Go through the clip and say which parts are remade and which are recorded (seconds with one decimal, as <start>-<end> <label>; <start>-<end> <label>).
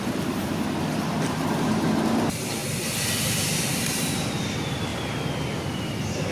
0.0-4.9 remade; 4.9-5.7 recorded; 5.7-6.3 remade